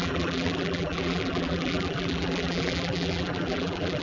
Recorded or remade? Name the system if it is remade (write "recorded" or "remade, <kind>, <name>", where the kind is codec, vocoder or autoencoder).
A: remade, vocoder, BigVGAN v2